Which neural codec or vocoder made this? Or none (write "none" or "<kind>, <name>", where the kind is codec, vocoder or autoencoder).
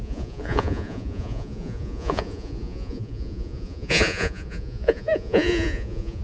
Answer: vocoder, Vocos